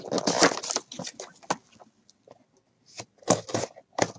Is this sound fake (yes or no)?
no